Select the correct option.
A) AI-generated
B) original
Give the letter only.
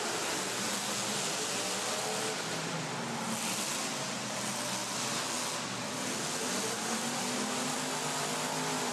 B